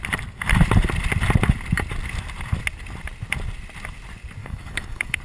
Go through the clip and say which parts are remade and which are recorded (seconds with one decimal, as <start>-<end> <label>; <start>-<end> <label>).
0.0-4.4 recorded; 4.4-5.2 remade